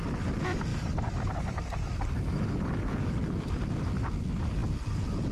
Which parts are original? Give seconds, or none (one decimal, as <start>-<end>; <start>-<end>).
0.0-0.7; 3.9-5.3